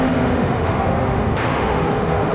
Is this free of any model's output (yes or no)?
no